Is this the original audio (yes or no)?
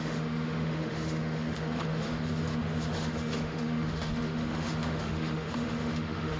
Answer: no